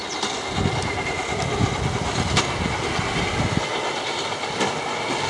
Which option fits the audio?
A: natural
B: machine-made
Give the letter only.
A